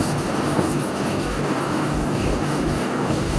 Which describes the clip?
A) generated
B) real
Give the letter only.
A